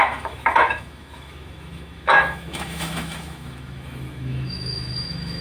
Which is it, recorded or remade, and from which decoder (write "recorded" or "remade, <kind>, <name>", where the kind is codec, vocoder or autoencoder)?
remade, autoencoder, DAC-VAE